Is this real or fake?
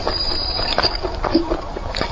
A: real